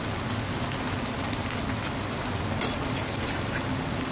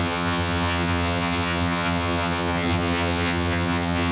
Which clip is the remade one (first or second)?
second